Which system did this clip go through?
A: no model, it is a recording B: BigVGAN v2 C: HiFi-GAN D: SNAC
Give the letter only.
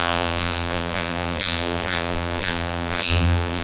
B